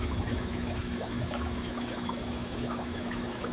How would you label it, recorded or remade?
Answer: remade